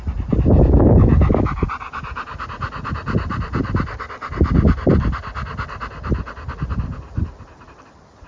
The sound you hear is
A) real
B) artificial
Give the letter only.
A